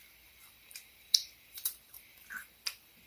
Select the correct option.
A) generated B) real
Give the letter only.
A